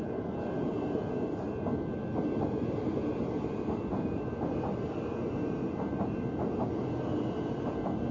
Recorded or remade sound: recorded